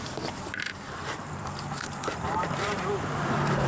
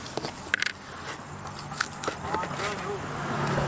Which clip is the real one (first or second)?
second